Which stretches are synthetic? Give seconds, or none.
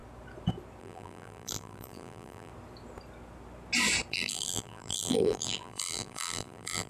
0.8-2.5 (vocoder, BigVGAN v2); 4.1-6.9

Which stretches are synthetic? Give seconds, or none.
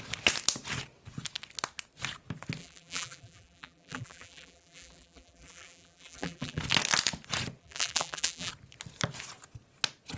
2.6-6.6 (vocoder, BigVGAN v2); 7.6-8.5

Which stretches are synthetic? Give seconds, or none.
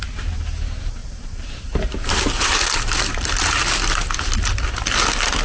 1.0-3.6 (vocoder, BigVGAN v2)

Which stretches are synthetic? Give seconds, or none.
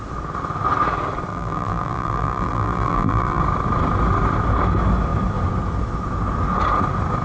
1.3-3.4 (vocoder, BigVGAN v2)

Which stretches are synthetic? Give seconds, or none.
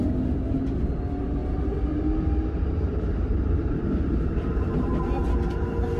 1.4-5.0 (vocoder, BigVGAN v2)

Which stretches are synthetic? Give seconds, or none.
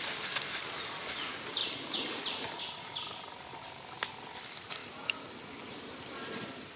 0.0-4.8 (vocoder, BigVGAN v2); 5.7-6.8